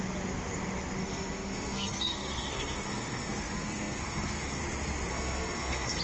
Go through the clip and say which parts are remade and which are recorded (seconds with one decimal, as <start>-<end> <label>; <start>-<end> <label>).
0.0-1.0 recorded; 1.0-4.6 remade; 4.6-5.1 recorded; 5.1-6.0 remade